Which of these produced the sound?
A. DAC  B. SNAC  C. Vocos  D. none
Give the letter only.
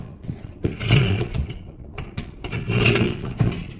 C